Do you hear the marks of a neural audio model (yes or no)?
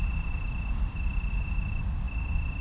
no